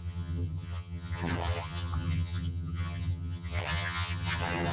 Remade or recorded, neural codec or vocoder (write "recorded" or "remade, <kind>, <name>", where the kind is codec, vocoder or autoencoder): remade, vocoder, HiFi-GAN